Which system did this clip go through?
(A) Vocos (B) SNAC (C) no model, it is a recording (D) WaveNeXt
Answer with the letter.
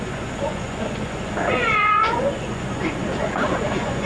A